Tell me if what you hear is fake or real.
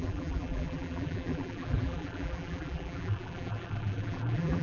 fake